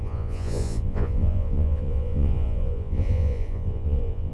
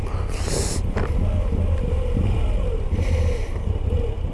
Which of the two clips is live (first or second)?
second